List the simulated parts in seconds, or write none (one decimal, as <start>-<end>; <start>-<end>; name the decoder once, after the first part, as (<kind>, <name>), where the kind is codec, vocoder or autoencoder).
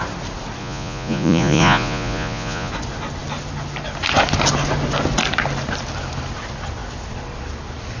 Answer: 0.6-2.7 (vocoder, Vocos)